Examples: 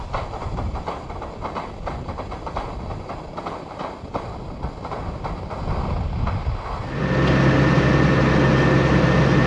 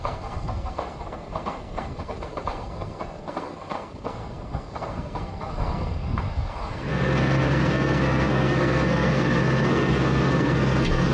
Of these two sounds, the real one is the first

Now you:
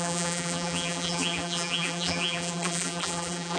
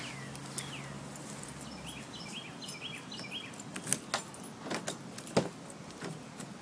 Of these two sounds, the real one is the second